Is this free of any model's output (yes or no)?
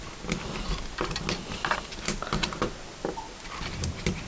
yes